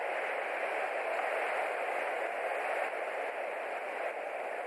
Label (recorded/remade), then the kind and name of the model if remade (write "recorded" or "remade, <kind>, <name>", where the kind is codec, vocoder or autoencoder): recorded